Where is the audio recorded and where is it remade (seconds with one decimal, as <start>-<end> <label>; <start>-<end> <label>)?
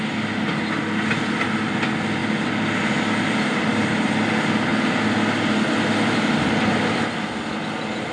0.0-8.1 recorded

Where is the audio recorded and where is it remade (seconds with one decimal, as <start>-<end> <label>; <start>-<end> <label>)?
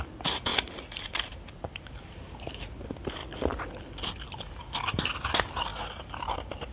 0.0-6.7 recorded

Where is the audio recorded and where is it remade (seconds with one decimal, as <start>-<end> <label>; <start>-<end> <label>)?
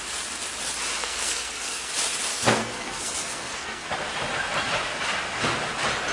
0.0-1.0 recorded; 1.0-1.9 remade; 1.9-2.3 recorded; 2.3-3.9 remade; 3.9-6.1 recorded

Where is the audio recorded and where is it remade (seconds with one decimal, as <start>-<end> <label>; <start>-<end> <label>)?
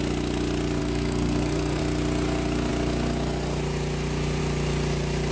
0.0-0.8 recorded; 0.8-1.8 remade; 1.8-5.3 recorded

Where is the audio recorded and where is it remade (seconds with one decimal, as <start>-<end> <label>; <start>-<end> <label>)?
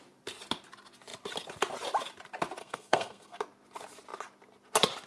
0.0-2.6 recorded; 2.6-3.4 remade; 3.4-5.1 recorded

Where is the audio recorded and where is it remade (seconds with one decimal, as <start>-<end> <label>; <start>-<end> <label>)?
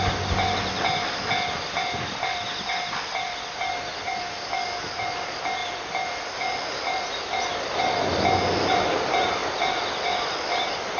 0.0-11.0 recorded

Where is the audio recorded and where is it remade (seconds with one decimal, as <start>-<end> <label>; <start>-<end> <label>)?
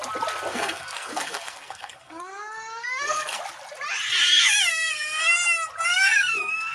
0.0-0.5 recorded; 0.5-3.4 remade; 3.4-4.7 recorded; 4.7-5.3 remade; 5.3-5.9 recorded; 5.9-6.7 remade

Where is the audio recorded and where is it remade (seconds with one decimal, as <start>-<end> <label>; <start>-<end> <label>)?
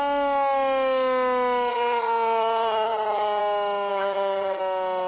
0.0-1.7 recorded; 1.7-3.4 remade; 3.4-3.9 recorded; 3.9-4.6 remade; 4.6-5.1 recorded